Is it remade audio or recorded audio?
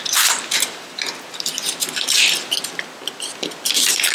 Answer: recorded